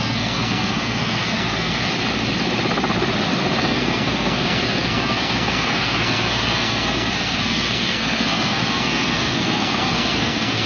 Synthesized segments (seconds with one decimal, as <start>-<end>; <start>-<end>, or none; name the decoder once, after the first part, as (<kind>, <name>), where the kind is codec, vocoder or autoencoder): 0.0-1.9 (codec, SNAC); 3.6-10.7